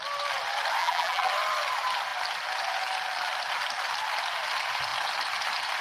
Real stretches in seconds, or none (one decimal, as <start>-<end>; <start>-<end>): 0.0-0.8; 1.3-5.8